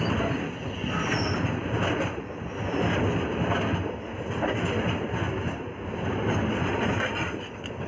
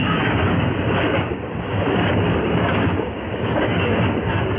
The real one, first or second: first